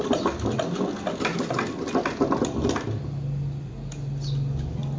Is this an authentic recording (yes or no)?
yes